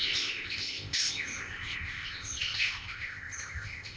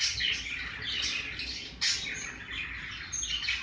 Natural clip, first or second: second